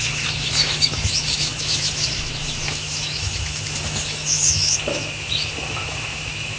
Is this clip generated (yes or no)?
yes